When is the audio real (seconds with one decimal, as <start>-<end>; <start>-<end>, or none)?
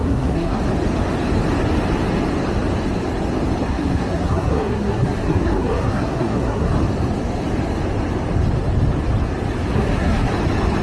0.6-3.6; 6.7-9.7; 10.3-10.8